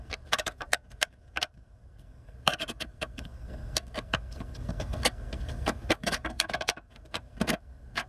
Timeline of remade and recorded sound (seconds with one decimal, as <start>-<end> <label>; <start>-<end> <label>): 0.0-8.1 remade